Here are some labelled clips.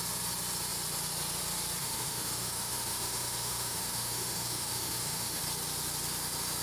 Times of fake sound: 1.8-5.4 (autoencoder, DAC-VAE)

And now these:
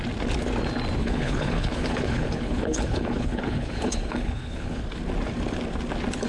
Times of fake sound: 1.0-4.8 (codec, HILCodec)

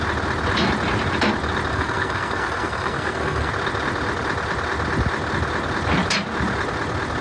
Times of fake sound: 1.7-3.5 (codec, SNAC)

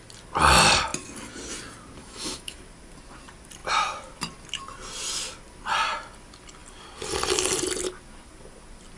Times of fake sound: 2.0-2.6 (autoencoder, DAC-VAE)

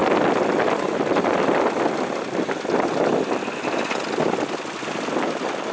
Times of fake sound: none

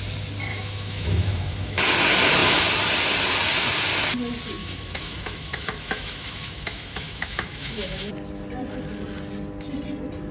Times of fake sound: 0.5-1.8 (autoencoder, DAC-VAE); 4.6-8.1

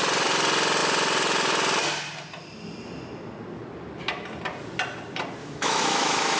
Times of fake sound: 5.4-6.4 (autoencoder, DAC-VAE)

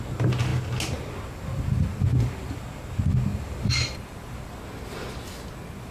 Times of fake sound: 2.1-2.6 (vocoder, BigVGAN v2); 3.3-4.5